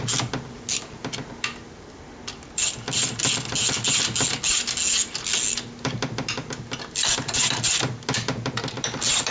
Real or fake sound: real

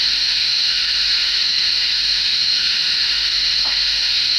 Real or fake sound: fake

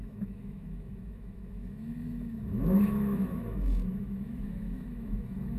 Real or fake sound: fake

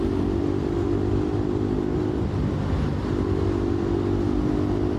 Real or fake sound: real